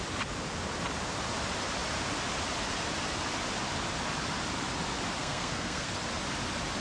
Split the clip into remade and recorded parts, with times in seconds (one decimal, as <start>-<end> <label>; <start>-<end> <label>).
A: 0.0-5.2 recorded; 5.2-5.9 remade; 5.9-6.8 recorded